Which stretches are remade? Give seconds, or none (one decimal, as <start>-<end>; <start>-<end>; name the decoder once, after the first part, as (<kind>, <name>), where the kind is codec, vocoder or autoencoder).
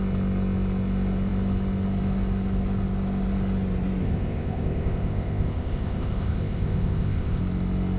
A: 4.0-7.4 (codec, ZipCodec)